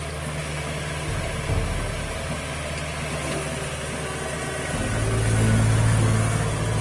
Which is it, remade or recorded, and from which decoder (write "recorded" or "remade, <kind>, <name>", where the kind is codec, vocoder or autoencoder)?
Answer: recorded